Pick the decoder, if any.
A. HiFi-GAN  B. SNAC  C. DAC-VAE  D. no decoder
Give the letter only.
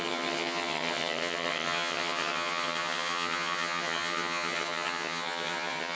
A